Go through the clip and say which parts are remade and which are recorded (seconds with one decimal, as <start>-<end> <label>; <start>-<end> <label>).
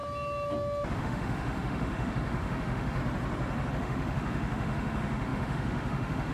0.0-1.0 recorded; 1.0-3.0 remade; 3.0-3.7 recorded; 3.7-6.3 remade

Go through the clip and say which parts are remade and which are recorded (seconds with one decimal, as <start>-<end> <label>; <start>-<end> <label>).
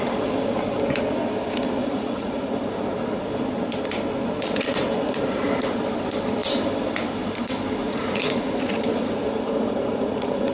0.0-1.8 recorded; 1.8-2.8 remade; 2.8-7.8 recorded; 7.8-10.5 remade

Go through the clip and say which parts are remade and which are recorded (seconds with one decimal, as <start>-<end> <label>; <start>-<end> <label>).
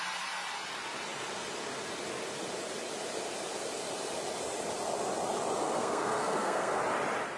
0.0-5.6 recorded; 5.6-6.8 remade; 6.8-7.4 recorded